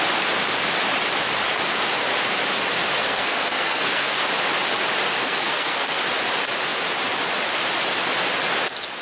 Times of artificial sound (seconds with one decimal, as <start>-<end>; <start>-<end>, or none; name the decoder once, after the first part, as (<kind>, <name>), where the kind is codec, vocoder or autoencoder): 3.0-4.3 (codec, SNAC); 5.2-6.0